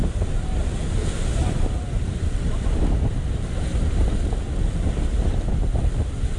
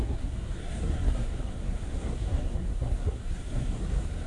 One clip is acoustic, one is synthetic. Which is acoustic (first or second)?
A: first